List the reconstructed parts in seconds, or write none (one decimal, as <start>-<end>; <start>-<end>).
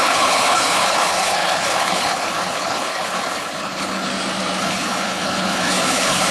0.0-4.1; 4.6-6.3